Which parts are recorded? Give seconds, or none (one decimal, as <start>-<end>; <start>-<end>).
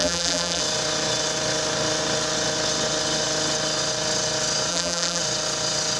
0.6-4.7; 5.2-6.0